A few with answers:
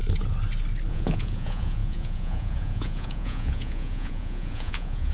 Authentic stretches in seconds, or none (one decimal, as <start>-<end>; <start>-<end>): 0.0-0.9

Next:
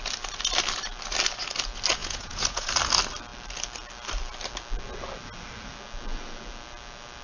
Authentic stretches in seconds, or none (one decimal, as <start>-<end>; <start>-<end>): 0.0-2.0; 2.7-7.2

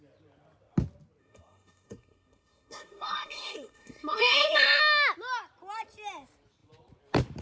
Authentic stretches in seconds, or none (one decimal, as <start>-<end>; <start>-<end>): 0.0-1.2; 4.8-7.4

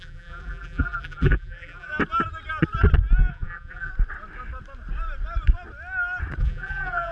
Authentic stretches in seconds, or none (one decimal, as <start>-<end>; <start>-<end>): 1.9-3.3; 3.9-6.4

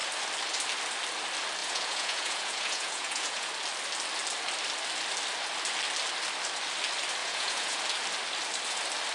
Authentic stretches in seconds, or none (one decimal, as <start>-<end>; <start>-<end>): 0.0-1.6; 3.5-7.2; 7.8-9.1

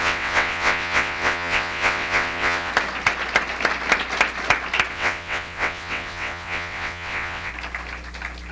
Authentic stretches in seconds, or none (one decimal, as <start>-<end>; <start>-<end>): 2.7-4.9; 7.5-8.5

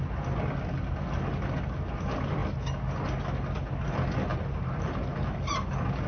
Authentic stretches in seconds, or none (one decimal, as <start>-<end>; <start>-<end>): 0.0-4.3; 5.1-6.1